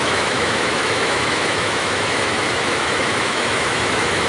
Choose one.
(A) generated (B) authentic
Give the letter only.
A